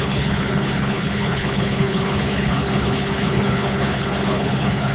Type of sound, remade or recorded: remade